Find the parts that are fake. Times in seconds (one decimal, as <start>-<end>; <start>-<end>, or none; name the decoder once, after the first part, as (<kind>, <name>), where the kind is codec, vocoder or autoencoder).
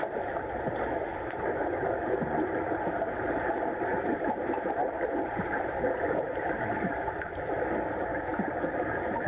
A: 3.9-7.4 (vocoder, BigVGAN v2); 8.3-8.9